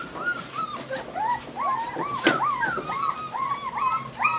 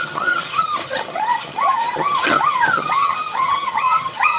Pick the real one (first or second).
first